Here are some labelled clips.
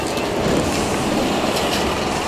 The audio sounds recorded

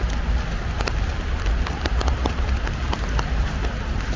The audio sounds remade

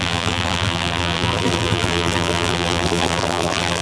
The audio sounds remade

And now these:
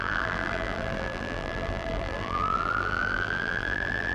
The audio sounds remade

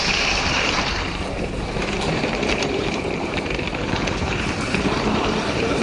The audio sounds remade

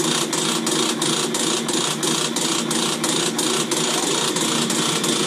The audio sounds recorded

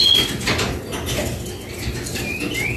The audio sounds recorded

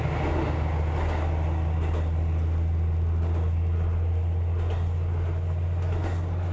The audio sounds recorded